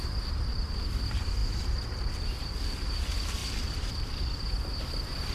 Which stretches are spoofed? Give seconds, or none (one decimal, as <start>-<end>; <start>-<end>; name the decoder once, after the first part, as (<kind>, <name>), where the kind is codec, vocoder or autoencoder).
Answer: none